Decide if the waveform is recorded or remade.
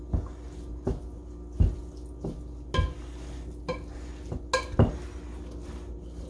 recorded